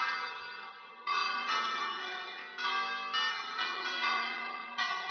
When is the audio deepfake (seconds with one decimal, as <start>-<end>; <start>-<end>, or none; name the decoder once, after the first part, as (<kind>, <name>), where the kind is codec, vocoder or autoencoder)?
0.0-2.4 (vocoder, HiFi-GAN); 3.3-5.1

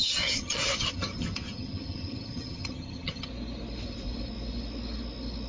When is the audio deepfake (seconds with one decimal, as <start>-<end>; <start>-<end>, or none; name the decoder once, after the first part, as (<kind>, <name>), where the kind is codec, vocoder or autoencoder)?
0.0-3.3 (vocoder, HiFi-GAN)

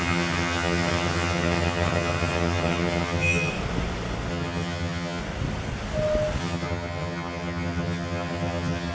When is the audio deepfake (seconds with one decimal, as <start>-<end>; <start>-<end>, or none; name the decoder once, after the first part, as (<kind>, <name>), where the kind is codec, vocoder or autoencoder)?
0.0-3.5 (vocoder, HiFi-GAN); 4.3-5.2; 6.4-8.9

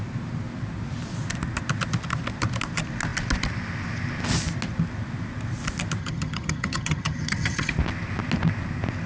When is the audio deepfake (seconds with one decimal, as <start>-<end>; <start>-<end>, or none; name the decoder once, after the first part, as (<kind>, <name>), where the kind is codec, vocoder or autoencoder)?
6.0-7.7 (vocoder, HiFi-GAN)

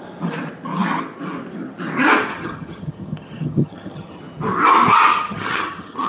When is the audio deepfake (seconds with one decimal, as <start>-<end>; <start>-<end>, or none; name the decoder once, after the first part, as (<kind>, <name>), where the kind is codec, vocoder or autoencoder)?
2.3-4.2 (vocoder, HiFi-GAN); 5.1-6.1

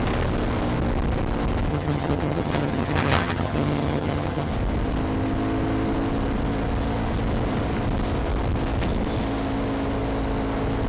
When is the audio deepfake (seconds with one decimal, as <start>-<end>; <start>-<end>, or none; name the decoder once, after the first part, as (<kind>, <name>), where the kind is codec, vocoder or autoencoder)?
1.7-4.5 (vocoder, HiFi-GAN)